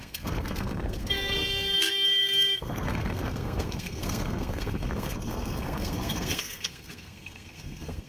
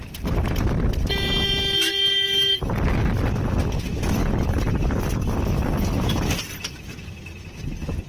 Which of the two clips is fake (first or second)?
first